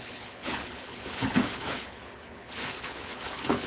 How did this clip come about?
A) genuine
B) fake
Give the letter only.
B